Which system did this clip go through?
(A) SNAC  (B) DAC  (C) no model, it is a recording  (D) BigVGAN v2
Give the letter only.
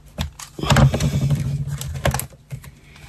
C